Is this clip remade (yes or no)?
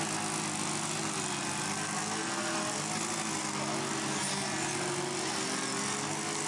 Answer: no